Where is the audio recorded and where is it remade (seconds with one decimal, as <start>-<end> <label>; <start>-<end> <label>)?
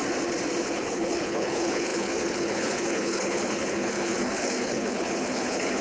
0.0-0.6 recorded; 0.6-5.8 remade